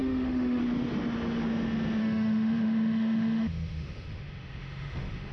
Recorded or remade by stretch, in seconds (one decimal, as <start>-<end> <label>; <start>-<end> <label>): 0.0-0.6 remade; 0.6-2.0 recorded; 2.0-5.3 remade